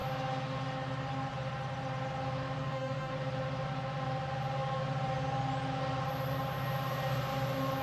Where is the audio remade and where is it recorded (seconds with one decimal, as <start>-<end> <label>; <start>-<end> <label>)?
0.0-2.6 recorded; 2.6-3.1 remade; 3.1-7.8 recorded